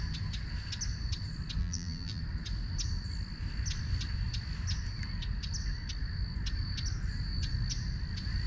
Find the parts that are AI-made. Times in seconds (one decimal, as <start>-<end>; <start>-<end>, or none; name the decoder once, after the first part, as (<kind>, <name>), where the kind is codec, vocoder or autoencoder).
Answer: 1.6-2.2 (vocoder, BigVGAN v2)

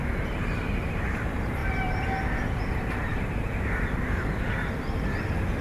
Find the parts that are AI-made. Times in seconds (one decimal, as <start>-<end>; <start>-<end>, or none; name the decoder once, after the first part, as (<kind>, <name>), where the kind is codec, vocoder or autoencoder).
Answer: 0.0-1.6 (vocoder, BigVGAN v2); 2.4-5.6

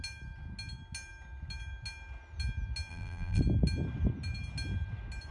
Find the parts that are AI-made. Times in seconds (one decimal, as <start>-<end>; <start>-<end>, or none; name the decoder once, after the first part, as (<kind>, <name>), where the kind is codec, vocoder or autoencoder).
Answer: 2.9-3.4 (vocoder, BigVGAN v2)

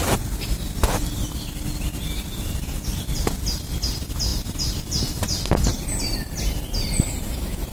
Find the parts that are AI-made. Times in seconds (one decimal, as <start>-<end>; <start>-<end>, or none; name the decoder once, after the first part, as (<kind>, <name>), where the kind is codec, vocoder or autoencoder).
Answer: 5.7-6.3 (vocoder, BigVGAN v2)

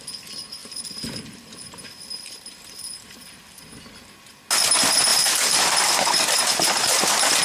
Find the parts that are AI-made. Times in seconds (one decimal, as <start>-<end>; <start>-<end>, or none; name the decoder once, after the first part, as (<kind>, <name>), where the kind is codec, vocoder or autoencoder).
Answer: 0.6-3.6 (vocoder, BigVGAN v2); 5.1-7.4

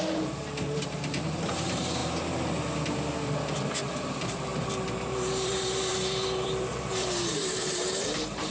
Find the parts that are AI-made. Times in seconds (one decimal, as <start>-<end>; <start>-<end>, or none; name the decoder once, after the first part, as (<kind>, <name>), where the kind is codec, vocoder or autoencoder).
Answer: 0.0-2.0 (vocoder, BigVGAN v2); 3.6-8.5

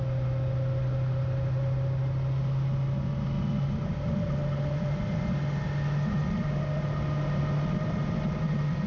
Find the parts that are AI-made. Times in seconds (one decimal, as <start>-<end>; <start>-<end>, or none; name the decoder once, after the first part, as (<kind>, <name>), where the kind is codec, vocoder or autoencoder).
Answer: none